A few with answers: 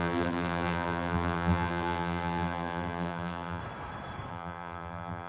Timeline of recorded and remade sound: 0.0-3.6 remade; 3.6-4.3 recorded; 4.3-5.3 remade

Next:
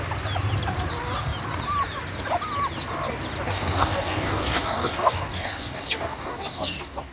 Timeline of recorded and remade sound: 0.0-3.5 recorded; 3.5-7.1 remade

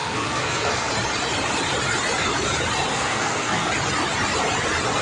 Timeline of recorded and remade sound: 0.0-0.9 remade; 0.9-2.9 recorded; 2.9-3.7 remade; 3.7-5.0 recorded